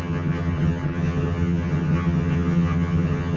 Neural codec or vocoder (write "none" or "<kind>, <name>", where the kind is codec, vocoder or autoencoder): vocoder, HiFi-GAN